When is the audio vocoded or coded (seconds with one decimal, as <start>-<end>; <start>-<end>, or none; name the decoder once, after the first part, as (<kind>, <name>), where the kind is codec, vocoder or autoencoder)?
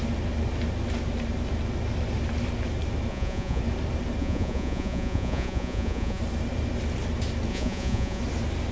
3.1-3.6 (vocoder, Vocos); 4.2-6.2; 7.5-8.2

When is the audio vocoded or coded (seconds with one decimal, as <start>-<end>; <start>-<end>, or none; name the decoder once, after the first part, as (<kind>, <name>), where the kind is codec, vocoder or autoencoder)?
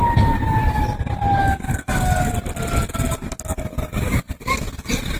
1.4-2.3 (codec, DAC)